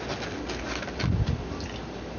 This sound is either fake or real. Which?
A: real